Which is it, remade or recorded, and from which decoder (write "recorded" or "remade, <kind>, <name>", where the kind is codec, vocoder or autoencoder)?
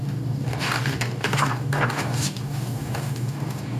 remade, codec, DAC